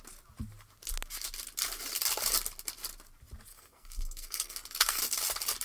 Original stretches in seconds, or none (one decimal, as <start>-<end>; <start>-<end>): 0.0-3.5; 5.0-5.6